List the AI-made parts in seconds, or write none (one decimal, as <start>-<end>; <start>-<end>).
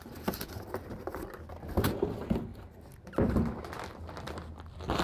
none